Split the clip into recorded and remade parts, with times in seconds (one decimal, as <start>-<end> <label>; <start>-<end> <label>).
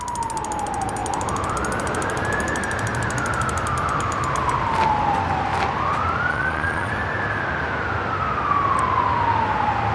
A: 0.0-6.3 recorded; 6.3-6.9 remade; 6.9-9.9 recorded